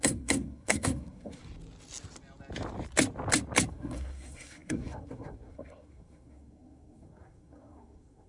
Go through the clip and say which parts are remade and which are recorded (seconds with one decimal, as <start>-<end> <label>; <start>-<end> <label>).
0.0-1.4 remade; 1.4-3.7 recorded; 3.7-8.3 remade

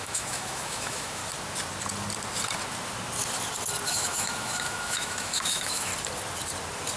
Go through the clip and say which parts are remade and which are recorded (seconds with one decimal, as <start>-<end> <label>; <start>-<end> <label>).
0.0-1.2 remade; 1.2-3.9 recorded; 3.9-5.9 remade; 5.9-7.0 recorded

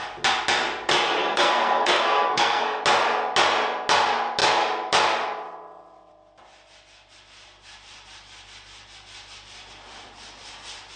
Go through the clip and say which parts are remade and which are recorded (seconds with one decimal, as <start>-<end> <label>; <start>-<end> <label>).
0.0-1.2 recorded; 1.2-2.8 remade; 2.8-11.0 recorded

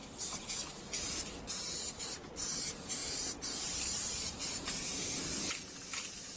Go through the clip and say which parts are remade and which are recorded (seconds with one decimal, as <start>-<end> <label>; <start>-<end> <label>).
0.0-0.8 remade; 0.8-3.0 recorded; 3.0-5.1 remade; 5.1-6.4 recorded

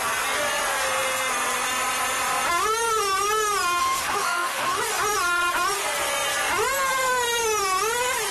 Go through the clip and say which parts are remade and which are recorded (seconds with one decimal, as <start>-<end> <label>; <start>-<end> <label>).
0.0-3.8 recorded; 3.8-4.8 remade; 4.8-8.3 recorded

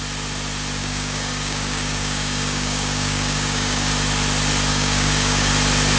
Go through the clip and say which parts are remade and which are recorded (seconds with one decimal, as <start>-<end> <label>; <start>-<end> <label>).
0.0-0.8 recorded; 0.8-3.9 remade; 3.9-4.7 recorded; 4.7-5.5 remade; 5.5-6.0 recorded